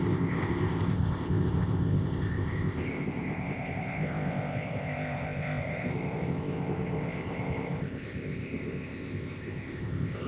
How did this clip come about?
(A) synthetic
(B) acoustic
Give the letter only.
A